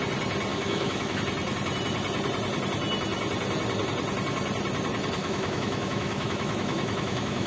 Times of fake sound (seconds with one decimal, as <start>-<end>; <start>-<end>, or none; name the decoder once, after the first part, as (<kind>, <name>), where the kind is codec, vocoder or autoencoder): 0.5-1.2 (autoencoder, DAC-VAE); 5.2-7.5